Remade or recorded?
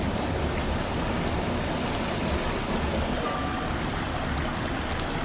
recorded